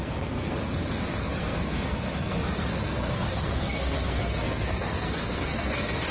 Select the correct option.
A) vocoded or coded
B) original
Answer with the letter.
A